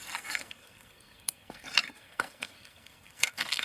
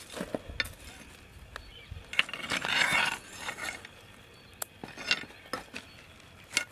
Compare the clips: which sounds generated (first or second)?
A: first